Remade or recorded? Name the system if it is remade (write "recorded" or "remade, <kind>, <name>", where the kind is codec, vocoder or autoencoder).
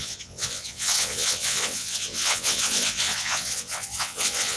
remade, vocoder, WaveNeXt